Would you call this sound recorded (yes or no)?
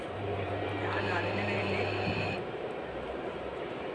no